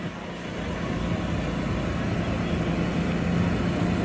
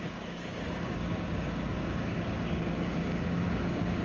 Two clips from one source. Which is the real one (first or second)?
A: first